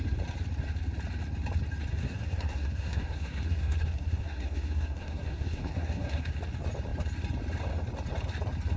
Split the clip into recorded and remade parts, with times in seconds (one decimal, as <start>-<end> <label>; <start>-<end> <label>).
0.0-1.9 recorded; 1.9-6.3 remade; 6.3-8.8 recorded